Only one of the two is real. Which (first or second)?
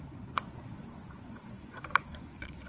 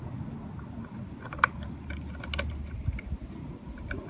second